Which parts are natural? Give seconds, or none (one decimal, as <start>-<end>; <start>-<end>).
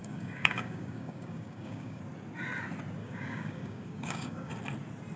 2.0-3.0; 4.5-5.2